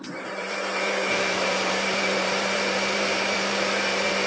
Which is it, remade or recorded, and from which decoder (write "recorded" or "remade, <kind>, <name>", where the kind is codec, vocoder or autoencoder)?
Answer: remade, vocoder, BigVGAN v2